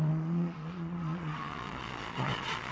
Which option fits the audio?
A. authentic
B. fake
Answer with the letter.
B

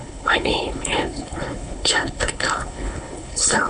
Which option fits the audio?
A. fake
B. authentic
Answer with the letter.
A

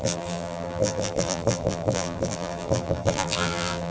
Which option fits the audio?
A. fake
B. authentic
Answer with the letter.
A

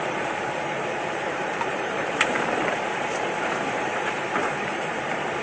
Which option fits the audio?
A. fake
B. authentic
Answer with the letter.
A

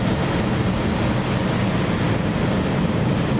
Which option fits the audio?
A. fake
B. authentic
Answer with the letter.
B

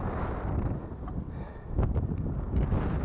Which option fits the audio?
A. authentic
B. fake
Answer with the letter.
A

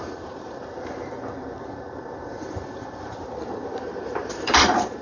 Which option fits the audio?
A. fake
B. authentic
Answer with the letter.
A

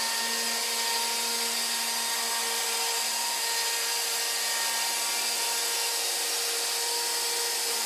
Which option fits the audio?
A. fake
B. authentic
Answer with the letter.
B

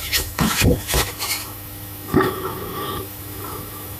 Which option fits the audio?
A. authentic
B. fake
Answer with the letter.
B